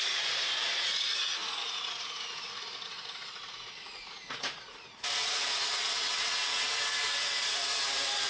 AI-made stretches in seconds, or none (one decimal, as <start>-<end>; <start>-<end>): 0.0-8.3

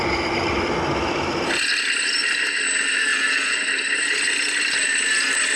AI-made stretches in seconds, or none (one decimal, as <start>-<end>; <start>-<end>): none

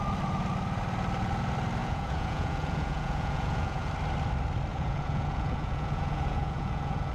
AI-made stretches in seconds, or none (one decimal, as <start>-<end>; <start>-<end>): 1.8-3.9; 4.7-7.1